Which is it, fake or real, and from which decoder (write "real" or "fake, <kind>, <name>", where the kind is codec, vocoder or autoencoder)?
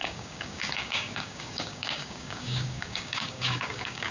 fake, codec, DAC